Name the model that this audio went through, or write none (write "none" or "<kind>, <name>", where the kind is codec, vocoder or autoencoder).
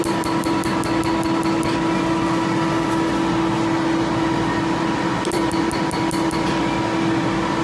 none